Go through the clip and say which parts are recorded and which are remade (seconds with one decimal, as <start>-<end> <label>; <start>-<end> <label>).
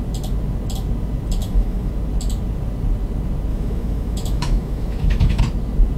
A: 0.0-1.4 recorded; 1.4-1.9 remade; 1.9-3.5 recorded; 3.5-5.4 remade; 5.4-6.0 recorded